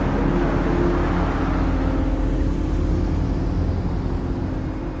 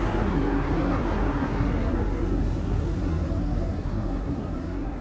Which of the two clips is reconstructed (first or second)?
second